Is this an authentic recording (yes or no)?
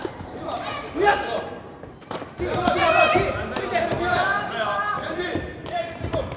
yes